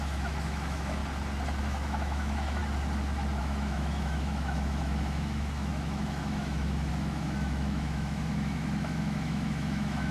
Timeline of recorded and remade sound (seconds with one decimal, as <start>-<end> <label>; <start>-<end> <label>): 0.0-1.0 remade; 1.0-1.6 recorded; 1.6-2.6 remade; 2.6-3.4 recorded; 3.4-10.1 remade